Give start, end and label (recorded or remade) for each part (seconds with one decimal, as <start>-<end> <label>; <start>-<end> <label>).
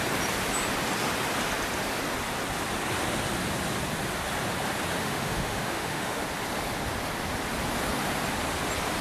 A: 0.0-5.0 recorded; 5.0-6.2 remade; 6.2-9.0 recorded